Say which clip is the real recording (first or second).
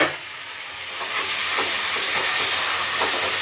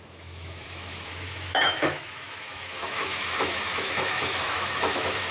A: first